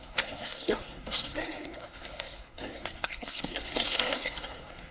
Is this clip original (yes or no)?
no